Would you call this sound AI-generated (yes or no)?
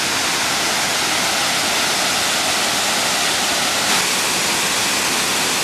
no